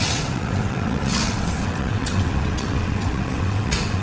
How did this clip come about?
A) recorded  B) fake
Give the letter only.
B